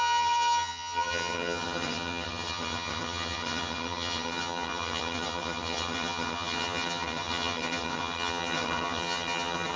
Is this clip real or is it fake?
fake